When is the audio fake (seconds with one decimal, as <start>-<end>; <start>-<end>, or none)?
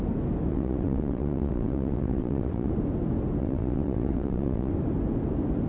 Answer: 0.5-2.7; 3.4-4.7